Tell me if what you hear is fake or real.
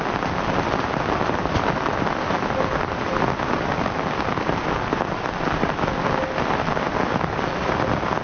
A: real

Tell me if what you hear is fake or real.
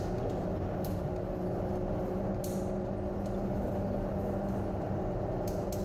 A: real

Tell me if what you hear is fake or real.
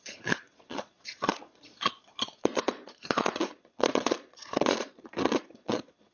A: fake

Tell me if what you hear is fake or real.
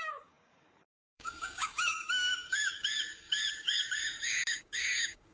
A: fake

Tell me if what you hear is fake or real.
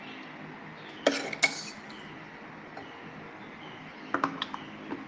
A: real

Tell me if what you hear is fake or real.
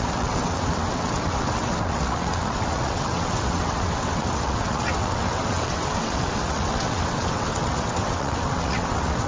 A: fake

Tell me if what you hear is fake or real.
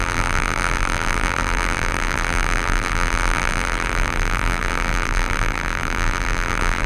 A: fake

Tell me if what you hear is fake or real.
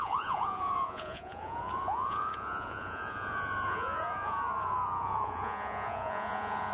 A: fake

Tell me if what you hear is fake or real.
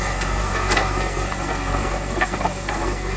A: fake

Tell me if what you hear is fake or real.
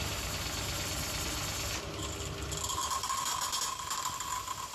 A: real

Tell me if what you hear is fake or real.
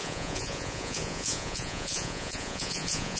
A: fake